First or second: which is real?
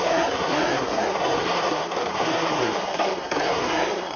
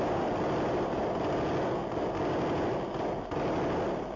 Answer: second